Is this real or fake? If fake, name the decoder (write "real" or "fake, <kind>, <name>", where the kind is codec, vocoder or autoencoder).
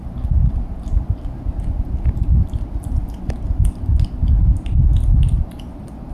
real